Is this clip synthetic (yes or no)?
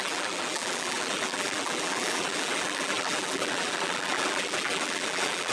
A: yes